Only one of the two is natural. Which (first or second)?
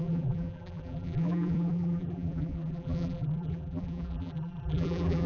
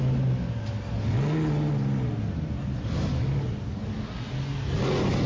second